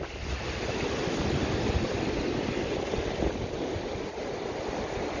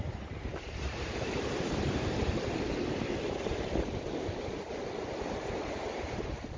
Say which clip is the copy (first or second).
second